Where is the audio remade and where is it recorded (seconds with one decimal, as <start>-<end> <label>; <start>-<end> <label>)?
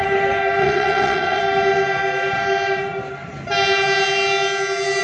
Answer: 0.0-0.6 recorded; 0.6-1.4 remade; 1.4-5.0 recorded